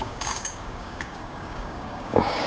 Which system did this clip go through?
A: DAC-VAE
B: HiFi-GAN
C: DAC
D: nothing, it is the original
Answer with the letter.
C